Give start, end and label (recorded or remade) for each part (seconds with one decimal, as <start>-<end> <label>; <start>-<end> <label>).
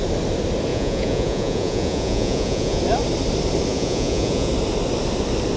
0.0-0.7 recorded; 0.7-2.8 remade; 2.8-3.7 recorded; 3.7-4.5 remade; 4.5-5.6 recorded